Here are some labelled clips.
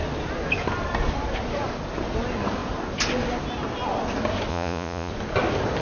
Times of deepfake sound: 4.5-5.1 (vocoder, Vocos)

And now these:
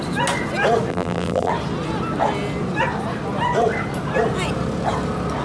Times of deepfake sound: 0.9-1.5 (vocoder, BigVGAN v2)